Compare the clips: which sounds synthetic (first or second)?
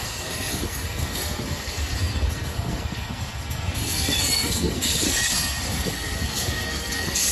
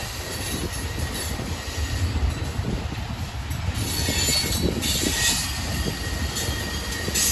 first